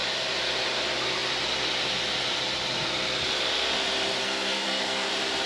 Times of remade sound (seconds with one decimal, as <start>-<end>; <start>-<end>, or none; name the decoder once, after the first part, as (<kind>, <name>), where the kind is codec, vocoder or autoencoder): 4.2-5.1 (codec, SNAC)